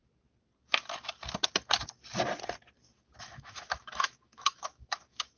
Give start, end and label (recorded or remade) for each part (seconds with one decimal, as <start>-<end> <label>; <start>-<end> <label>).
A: 0.0-3.2 recorded; 3.2-5.4 remade

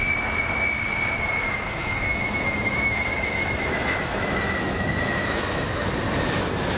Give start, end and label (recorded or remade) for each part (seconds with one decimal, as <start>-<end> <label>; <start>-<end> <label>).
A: 0.0-1.8 recorded; 1.8-5.9 remade; 5.9-6.8 recorded